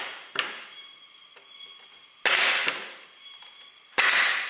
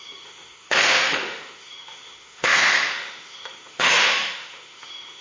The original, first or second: first